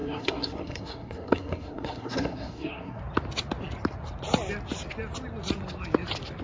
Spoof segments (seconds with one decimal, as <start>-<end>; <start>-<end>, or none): 0.0-3.0